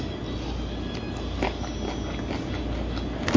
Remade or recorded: recorded